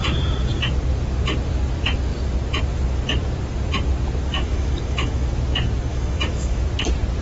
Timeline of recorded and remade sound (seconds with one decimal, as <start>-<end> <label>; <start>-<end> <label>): 0.0-4.3 recorded; 4.3-5.3 remade; 5.3-5.9 recorded; 5.9-6.6 remade; 6.6-7.2 recorded